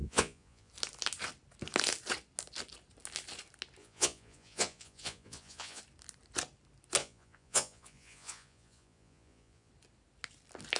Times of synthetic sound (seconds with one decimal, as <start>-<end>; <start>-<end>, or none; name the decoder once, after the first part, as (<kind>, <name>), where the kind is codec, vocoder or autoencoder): 0.0-0.7 (vocoder, Vocos); 3.8-5.8; 7.0-9.7